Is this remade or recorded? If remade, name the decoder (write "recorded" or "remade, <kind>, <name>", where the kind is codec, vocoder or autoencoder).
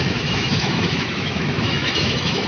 remade, autoencoder, DAC-VAE